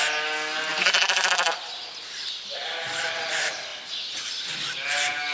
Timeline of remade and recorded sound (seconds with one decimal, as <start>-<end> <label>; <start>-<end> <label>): 0.0-0.7 recorded; 0.7-1.3 remade; 1.3-5.3 recorded